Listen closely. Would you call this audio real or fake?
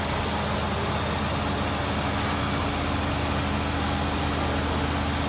real